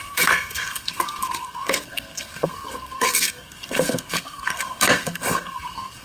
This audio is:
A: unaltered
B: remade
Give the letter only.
B